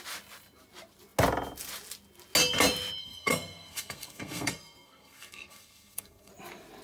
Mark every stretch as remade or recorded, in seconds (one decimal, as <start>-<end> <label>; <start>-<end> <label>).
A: 0.0-3.0 recorded; 3.0-6.3 remade; 6.3-6.8 recorded

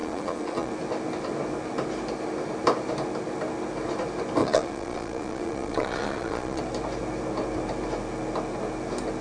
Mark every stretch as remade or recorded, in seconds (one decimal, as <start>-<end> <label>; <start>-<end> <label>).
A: 0.0-0.7 remade; 0.7-4.4 recorded; 4.4-6.6 remade; 6.6-9.2 recorded

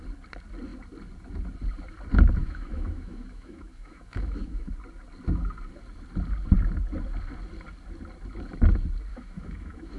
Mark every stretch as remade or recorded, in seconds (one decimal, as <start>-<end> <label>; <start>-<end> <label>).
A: 0.0-2.4 recorded; 2.4-4.7 remade; 4.7-9.1 recorded; 9.1-10.0 remade